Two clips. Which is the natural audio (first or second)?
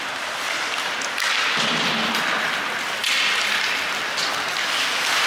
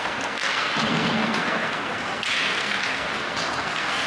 first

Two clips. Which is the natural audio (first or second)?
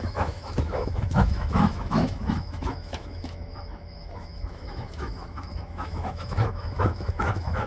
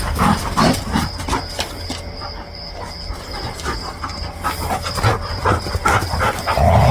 second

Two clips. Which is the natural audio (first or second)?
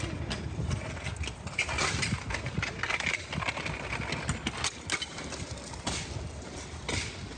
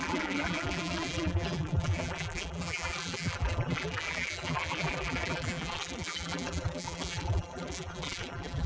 first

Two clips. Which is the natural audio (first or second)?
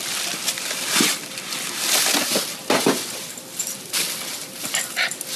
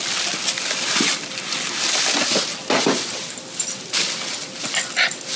second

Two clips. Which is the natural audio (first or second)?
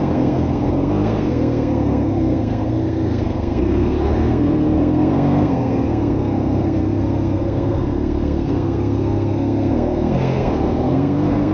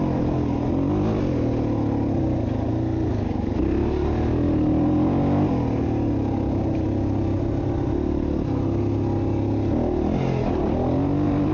second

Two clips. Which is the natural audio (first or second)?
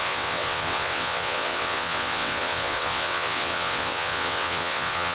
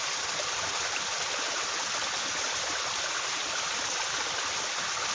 second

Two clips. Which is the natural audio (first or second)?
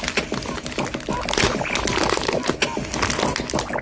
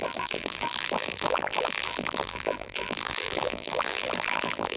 first